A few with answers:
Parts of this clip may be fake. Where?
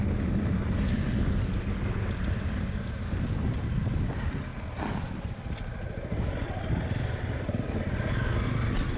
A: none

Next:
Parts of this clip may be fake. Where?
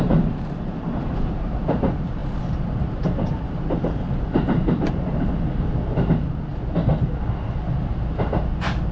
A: 0.0-6.5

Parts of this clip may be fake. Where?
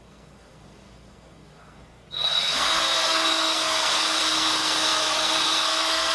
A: 0.0-6.1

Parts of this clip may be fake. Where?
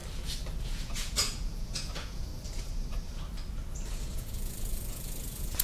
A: 0.6-2.3; 3.9-5.6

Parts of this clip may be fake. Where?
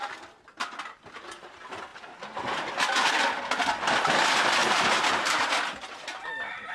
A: 4.6-5.5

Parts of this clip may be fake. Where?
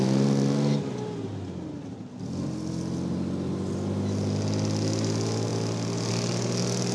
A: none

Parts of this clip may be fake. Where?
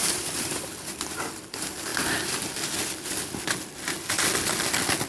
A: 0.0-1.1; 1.9-3.3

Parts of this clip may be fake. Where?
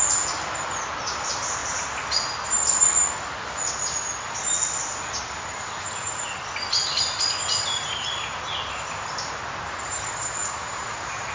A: 10.4-11.3